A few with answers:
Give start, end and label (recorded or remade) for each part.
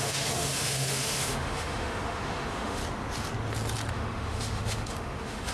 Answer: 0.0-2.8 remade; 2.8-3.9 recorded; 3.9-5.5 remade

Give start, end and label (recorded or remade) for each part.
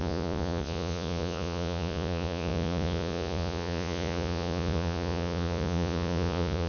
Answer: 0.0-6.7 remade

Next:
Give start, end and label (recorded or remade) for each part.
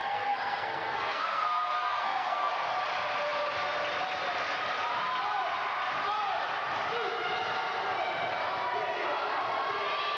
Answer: 0.0-2.5 remade; 2.5-10.2 recorded